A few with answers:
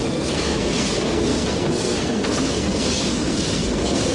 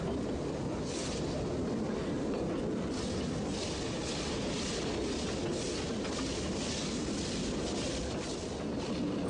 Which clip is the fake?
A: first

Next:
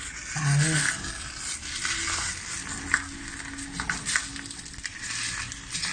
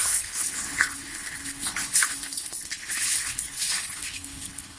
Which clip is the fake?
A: second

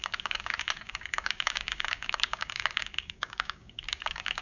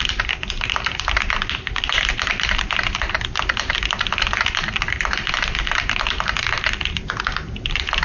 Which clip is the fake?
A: first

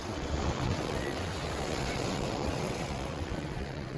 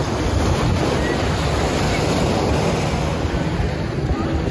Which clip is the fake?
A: first